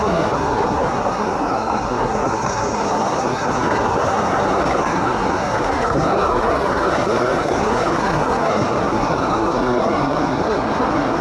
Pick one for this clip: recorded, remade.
remade